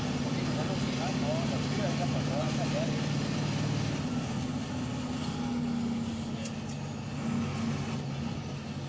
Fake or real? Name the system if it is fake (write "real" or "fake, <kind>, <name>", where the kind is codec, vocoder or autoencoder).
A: real